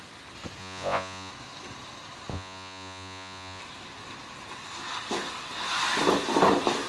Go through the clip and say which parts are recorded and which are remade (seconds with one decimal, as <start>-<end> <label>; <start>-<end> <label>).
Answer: 0.0-0.6 recorded; 0.6-1.3 remade; 1.3-2.3 recorded; 2.3-3.6 remade; 3.6-6.9 recorded